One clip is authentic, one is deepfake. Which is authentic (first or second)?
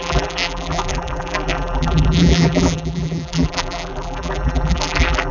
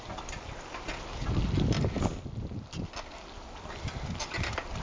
second